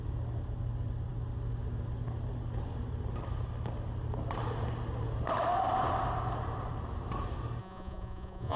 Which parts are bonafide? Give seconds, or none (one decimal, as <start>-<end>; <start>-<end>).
0.0-7.6